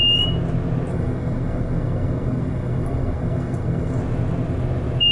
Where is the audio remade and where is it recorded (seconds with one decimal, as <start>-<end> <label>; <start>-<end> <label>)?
0.0-0.9 recorded; 0.9-4.0 remade; 4.0-5.1 recorded